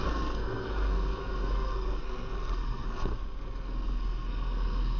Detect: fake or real fake